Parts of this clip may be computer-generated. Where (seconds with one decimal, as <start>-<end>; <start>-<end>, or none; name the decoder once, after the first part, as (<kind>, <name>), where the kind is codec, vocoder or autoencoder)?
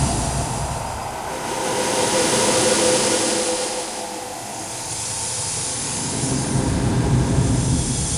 4.5-5.1 (codec, DAC); 5.7-6.6